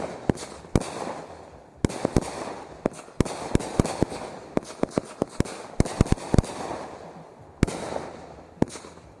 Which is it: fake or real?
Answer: real